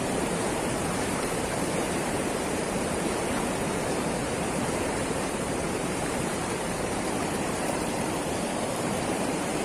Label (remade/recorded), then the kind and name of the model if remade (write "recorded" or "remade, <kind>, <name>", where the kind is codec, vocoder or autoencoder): remade, vocoder, BigVGAN v2